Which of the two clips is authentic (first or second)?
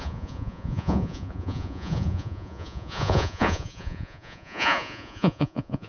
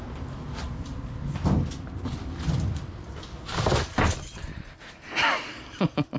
second